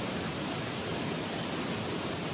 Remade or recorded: recorded